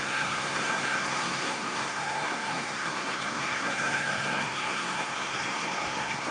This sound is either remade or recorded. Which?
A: remade